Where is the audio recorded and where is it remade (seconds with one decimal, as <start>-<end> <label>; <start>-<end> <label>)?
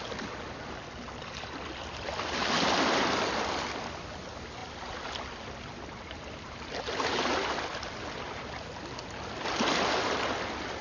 0.0-10.8 recorded